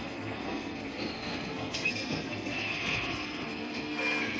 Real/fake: fake